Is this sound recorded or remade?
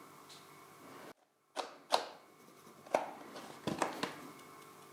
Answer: recorded